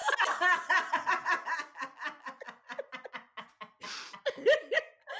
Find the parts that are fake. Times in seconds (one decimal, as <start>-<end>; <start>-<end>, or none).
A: none